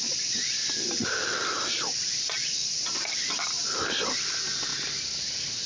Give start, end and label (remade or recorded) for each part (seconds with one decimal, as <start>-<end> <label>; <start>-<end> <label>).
0.0-0.6 recorded; 0.6-3.8 remade; 3.8-5.7 recorded